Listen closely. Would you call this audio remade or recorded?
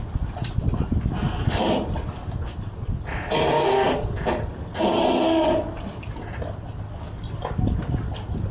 recorded